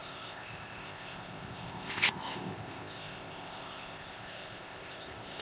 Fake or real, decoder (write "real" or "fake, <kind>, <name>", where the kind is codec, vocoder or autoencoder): fake, codec, ZipCodec